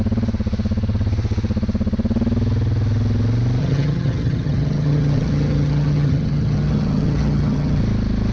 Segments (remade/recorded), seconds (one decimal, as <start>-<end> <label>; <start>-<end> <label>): 0.0-3.6 recorded; 3.6-7.8 remade; 7.8-8.3 recorded